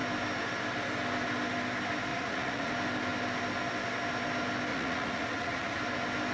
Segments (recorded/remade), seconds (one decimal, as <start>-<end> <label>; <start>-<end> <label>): 0.0-2.1 recorded; 2.1-2.7 remade; 2.7-4.7 recorded; 4.7-5.8 remade; 5.8-6.3 recorded